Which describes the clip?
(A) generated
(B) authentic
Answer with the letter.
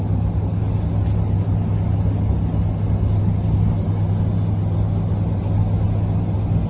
B